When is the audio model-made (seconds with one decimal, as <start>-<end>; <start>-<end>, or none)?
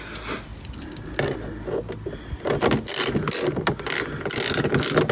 none